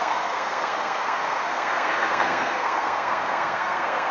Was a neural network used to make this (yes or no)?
yes